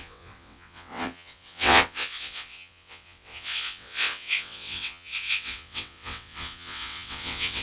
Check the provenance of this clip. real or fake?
fake